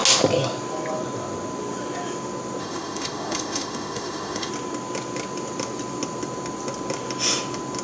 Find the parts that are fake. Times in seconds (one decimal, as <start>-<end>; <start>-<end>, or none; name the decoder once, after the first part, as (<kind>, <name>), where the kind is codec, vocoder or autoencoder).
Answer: 2.6-4.5 (autoencoder, DAC-VAE)